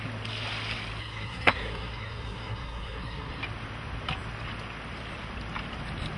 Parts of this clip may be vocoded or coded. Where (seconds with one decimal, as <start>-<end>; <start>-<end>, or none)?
1.0-3.4